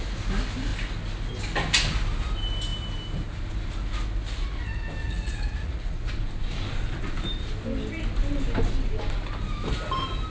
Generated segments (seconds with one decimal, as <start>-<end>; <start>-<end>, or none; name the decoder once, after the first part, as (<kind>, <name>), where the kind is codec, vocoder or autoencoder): 5.0-6.1 (vocoder, Vocos)